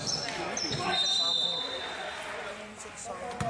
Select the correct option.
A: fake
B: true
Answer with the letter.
B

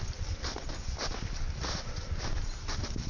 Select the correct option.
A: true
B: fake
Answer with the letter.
A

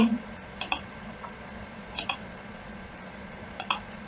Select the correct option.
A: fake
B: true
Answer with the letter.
A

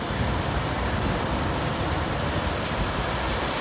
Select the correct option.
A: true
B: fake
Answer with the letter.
A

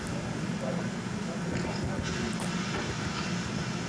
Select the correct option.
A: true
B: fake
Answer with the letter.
A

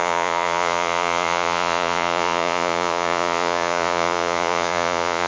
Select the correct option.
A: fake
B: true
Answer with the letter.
A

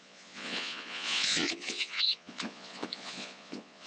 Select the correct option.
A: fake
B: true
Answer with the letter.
A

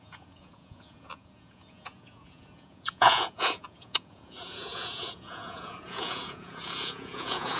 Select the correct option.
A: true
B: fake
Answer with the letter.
B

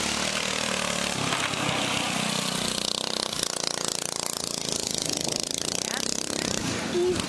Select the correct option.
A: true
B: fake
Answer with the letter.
A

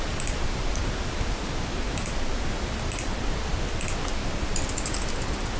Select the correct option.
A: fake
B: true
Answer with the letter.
B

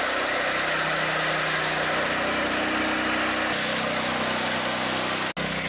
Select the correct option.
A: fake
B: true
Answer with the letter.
B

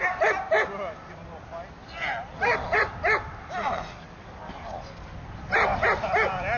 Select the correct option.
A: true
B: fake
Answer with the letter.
A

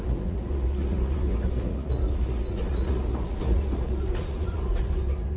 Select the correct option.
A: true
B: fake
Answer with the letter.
B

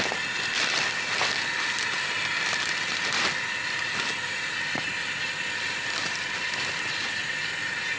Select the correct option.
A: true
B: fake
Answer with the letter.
A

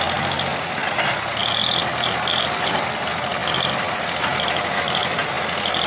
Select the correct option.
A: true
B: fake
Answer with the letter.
A